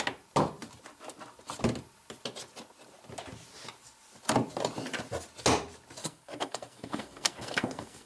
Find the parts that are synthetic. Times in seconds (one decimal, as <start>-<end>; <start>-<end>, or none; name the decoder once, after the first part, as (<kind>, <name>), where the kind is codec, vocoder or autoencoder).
6.0-8.1 (codec, SNAC)